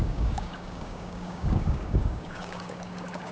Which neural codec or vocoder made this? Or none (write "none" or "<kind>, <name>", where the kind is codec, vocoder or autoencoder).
codec, DAC